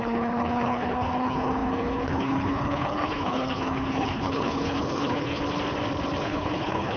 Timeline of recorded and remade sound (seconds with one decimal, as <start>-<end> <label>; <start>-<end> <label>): 0.0-5.4 remade; 5.4-6.2 recorded; 6.2-7.0 remade